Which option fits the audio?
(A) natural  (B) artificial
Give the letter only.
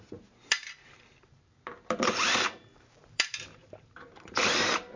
B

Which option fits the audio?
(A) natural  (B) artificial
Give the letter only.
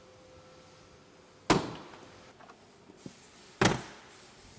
A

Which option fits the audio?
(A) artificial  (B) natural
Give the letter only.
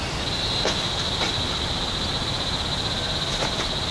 B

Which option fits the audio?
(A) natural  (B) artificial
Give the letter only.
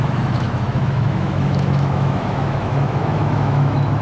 B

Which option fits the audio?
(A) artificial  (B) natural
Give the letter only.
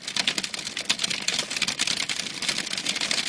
B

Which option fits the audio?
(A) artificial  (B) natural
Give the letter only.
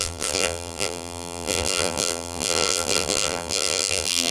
A